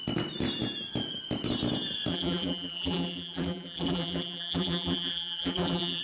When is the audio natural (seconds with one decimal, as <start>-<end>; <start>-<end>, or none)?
0.0-2.1